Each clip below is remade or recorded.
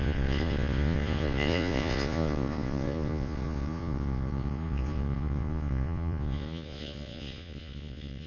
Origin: remade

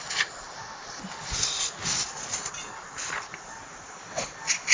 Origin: recorded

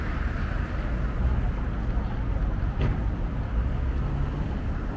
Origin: recorded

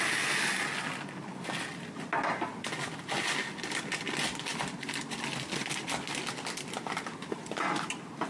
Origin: recorded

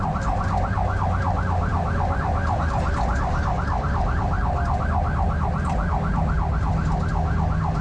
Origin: recorded